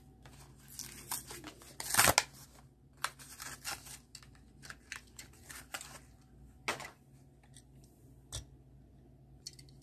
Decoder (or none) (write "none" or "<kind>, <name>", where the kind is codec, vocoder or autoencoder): none